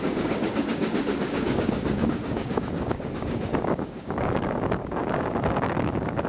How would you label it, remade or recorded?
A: remade